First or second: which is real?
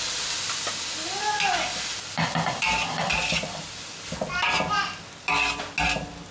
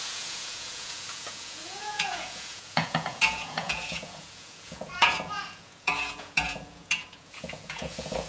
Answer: first